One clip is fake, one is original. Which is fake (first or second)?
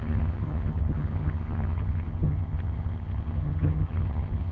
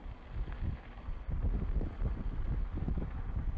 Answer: first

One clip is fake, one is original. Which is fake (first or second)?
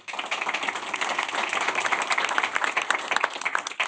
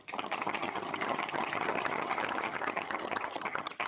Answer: second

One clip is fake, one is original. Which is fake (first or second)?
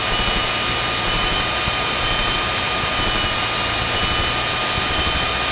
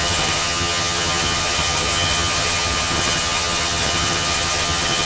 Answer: second